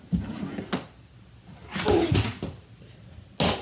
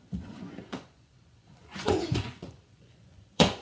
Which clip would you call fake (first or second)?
second